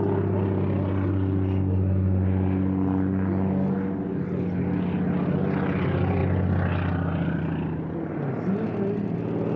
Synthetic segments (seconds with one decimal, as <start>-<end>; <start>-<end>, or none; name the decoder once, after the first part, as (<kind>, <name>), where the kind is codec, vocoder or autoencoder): none